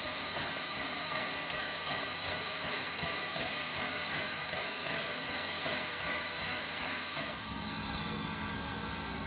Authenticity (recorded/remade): remade